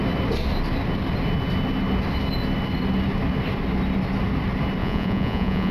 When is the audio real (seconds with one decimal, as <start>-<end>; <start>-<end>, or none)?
0.0-4.8